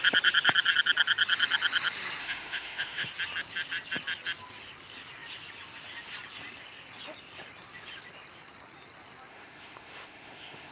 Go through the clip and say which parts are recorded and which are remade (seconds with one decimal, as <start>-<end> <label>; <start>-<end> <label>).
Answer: 0.0-2.2 recorded; 2.2-3.1 remade; 3.1-9.3 recorded; 9.3-10.7 remade